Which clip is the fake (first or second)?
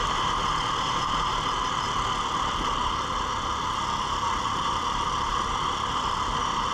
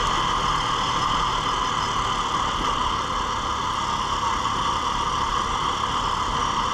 first